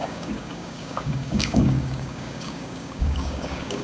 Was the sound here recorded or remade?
remade